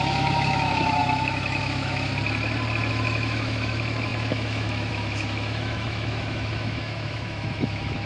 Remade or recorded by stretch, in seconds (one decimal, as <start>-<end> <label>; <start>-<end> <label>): 0.0-2.1 remade; 2.1-2.9 recorded; 2.9-8.1 remade